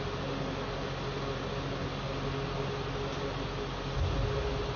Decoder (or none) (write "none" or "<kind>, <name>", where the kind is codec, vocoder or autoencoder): none